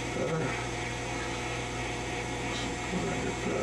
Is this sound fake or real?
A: real